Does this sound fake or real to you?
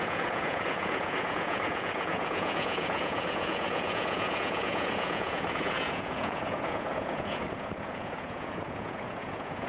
fake